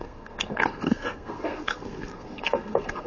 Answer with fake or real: fake